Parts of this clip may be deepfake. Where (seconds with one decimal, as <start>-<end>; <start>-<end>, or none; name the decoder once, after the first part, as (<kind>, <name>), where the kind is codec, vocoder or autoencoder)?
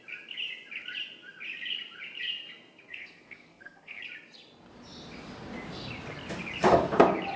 2.9-4.0 (codec, SNAC)